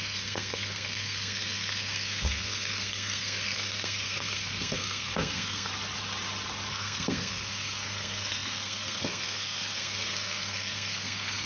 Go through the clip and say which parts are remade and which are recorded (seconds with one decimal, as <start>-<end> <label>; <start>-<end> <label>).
0.0-5.7 remade; 5.7-6.7 recorded; 6.7-11.5 remade